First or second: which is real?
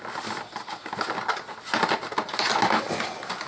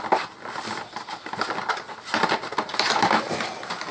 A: first